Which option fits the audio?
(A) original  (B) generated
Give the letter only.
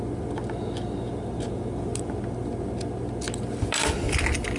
A